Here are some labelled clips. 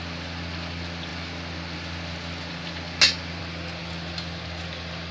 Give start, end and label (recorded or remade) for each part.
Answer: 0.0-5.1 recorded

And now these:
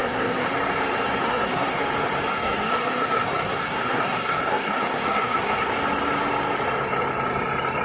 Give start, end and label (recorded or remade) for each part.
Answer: 0.0-0.5 remade; 0.5-1.2 recorded; 1.2-1.8 remade; 1.8-2.3 recorded; 2.3-5.7 remade; 5.7-7.8 recorded